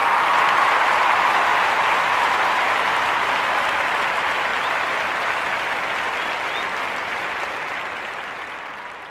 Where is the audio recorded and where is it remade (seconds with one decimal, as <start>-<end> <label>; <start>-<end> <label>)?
0.0-1.5 recorded; 1.5-3.7 remade; 3.7-9.1 recorded